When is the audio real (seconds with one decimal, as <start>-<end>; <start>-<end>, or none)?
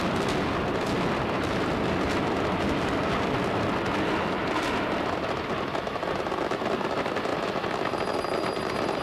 0.0-9.0